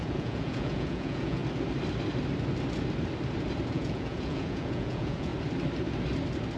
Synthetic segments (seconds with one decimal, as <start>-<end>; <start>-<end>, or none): 0.0-1.4; 3.7-5.3